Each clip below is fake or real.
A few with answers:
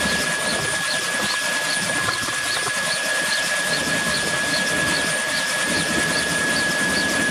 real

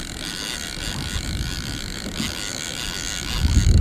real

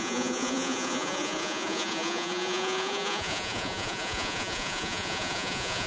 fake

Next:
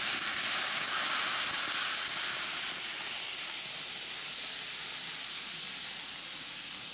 real